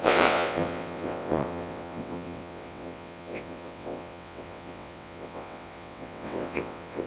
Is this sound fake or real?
fake